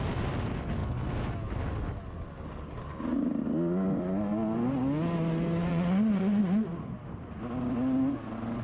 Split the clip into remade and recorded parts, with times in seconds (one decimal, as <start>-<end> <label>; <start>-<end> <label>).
0.0-5.7 recorded; 5.7-6.4 remade; 6.4-8.6 recorded